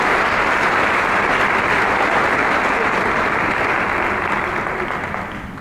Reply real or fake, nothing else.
real